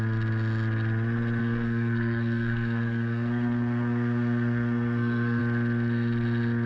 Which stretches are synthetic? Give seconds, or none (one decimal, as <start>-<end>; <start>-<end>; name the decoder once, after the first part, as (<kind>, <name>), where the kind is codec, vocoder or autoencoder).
1.4-5.4 (codec, SNAC)